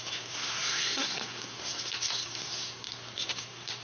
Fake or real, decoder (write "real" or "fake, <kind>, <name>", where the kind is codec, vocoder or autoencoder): fake, codec, SNAC